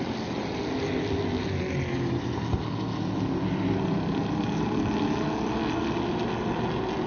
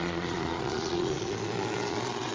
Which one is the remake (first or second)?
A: second